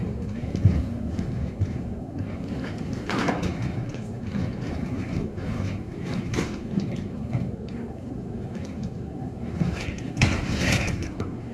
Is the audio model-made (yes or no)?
yes